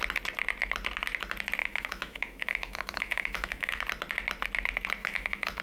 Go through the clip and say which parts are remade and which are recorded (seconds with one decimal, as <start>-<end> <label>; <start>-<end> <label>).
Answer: 0.0-1.6 recorded; 1.6-3.8 remade; 3.8-5.0 recorded; 5.0-5.6 remade